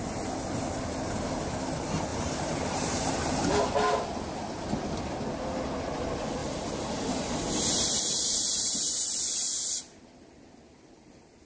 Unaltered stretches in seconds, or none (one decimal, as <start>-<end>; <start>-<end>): 0.0-2.1; 3.1-6.4; 8.9-11.5